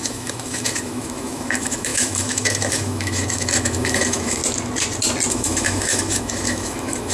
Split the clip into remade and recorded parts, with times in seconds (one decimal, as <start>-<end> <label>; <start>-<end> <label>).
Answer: 0.0-4.4 remade; 4.4-5.3 recorded; 5.3-7.1 remade